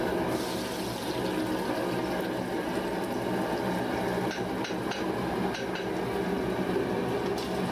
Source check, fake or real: real